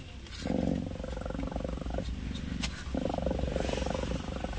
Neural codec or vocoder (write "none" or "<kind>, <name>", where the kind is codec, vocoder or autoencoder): none